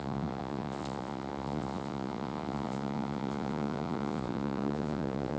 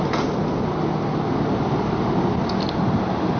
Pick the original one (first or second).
second